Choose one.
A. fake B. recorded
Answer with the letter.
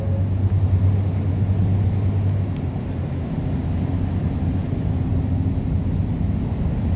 B